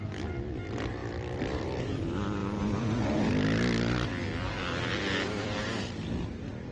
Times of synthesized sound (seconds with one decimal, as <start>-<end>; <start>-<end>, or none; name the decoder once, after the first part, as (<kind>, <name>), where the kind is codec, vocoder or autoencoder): 0.0-2.4 (vocoder, BigVGAN v2)